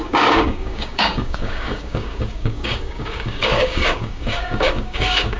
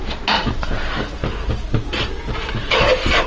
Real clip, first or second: second